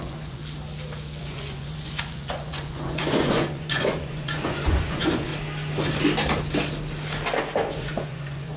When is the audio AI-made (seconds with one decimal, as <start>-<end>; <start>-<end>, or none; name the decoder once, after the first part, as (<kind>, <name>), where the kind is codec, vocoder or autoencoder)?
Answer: 0.0-0.4 (vocoder, Vocos); 1.2-5.3; 7.7-8.6